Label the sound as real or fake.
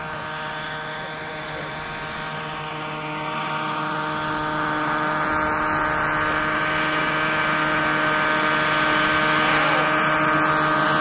real